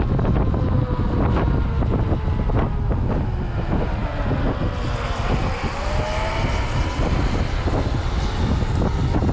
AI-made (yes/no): no